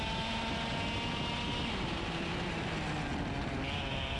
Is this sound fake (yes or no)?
no